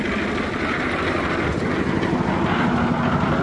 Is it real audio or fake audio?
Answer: real